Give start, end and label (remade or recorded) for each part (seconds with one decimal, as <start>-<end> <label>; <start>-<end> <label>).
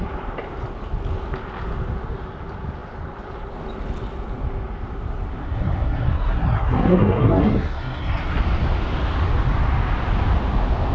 0.0-5.4 recorded; 5.4-8.4 remade; 8.4-10.9 recorded